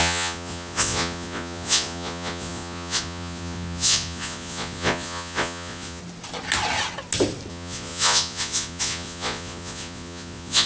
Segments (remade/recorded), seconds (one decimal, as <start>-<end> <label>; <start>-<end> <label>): 0.0-6.0 remade; 6.0-7.5 recorded; 7.5-10.7 remade